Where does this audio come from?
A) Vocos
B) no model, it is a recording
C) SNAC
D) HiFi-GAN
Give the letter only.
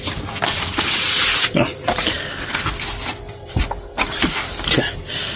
B